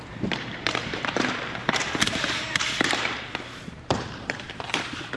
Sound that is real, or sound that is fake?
fake